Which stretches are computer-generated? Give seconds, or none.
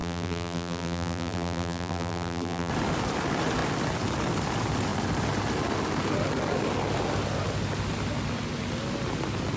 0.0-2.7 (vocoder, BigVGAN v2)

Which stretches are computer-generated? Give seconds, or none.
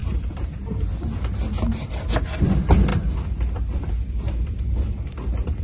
0.0-0.7 (vocoder, BigVGAN v2)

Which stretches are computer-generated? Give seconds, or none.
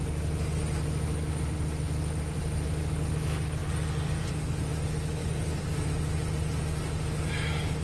3.6-4.3 (vocoder, BigVGAN v2); 5.2-5.9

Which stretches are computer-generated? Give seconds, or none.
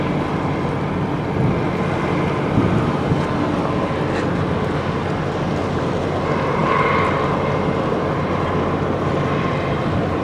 none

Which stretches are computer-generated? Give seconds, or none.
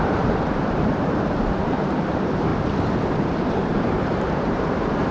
0.0-2.5 (vocoder, BigVGAN v2); 3.5-5.1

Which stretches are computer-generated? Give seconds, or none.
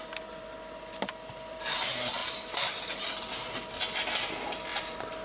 2.2-3.0 (vocoder, BigVGAN v2); 4.7-5.2